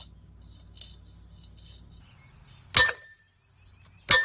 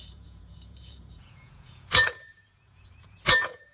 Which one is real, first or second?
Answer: first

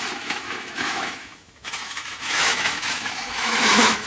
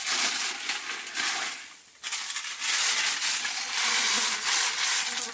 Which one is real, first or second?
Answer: second